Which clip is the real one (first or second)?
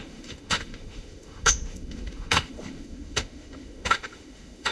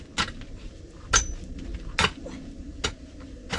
second